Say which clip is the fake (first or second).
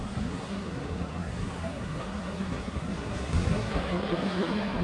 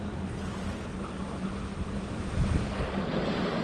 first